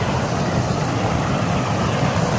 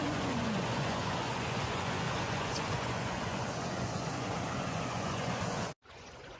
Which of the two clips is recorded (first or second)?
first